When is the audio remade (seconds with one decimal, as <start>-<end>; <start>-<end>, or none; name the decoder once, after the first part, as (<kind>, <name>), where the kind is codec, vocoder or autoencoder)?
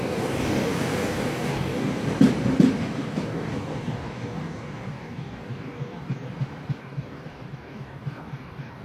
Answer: 0.0-2.0 (codec, DAC); 2.8-6.3; 6.8-8.8